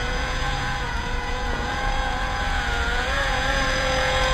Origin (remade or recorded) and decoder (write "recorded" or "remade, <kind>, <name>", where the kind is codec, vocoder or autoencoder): remade, vocoder, Vocos